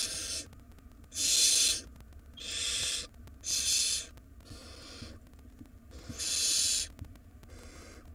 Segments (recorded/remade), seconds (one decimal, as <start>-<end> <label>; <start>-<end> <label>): 0.0-8.1 recorded